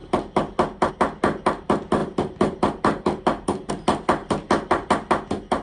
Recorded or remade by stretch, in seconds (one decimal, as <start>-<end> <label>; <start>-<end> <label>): 0.0-5.6 recorded

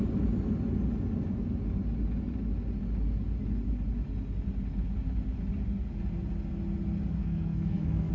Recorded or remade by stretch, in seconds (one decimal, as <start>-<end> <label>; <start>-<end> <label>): 0.0-7.2 recorded; 7.2-8.1 remade

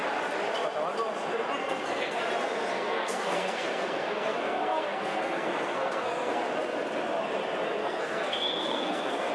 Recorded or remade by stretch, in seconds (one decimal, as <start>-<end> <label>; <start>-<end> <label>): 0.0-1.6 recorded; 1.6-2.2 remade; 2.2-2.7 recorded; 2.7-6.4 remade; 6.4-7.8 recorded; 7.8-9.3 remade

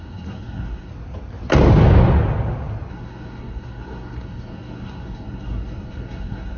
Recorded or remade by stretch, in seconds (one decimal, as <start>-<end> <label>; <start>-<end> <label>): 0.0-0.9 remade; 0.9-2.9 recorded; 2.9-6.6 remade

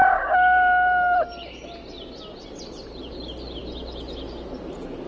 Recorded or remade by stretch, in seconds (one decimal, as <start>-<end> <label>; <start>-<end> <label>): 0.0-5.1 recorded

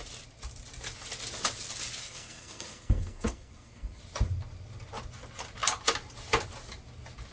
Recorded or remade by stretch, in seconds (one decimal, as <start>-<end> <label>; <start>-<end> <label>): 0.0-2.0 recorded; 2.0-4.0 remade; 4.0-7.3 recorded

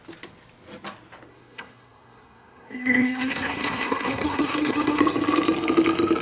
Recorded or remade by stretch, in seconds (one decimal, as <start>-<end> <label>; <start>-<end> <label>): 0.0-1.3 recorded; 1.3-5.0 remade; 5.0-6.2 recorded

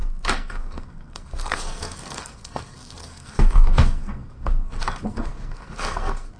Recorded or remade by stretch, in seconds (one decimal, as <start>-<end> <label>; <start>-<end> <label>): 0.0-6.4 remade